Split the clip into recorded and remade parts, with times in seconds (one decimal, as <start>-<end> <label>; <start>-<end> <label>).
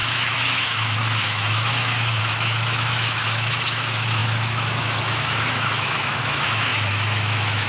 0.0-7.7 remade